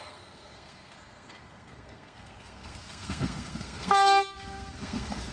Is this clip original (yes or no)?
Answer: no